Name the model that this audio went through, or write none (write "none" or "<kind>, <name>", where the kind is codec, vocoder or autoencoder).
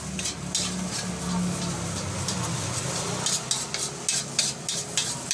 none